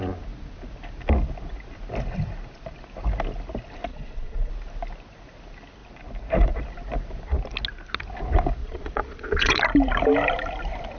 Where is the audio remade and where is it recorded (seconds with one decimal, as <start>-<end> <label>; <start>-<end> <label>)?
0.0-3.9 recorded; 3.9-4.5 remade; 4.5-8.6 recorded; 8.6-9.6 remade; 9.6-11.0 recorded